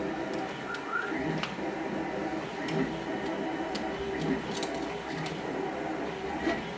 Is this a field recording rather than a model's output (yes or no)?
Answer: yes